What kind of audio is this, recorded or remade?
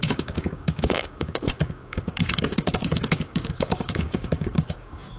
remade